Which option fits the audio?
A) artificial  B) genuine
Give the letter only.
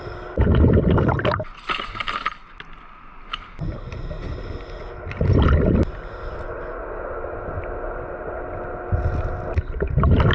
B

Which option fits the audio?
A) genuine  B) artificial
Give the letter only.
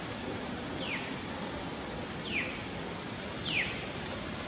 A